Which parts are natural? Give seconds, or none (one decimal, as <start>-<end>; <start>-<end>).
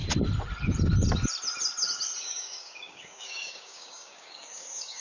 0.0-2.2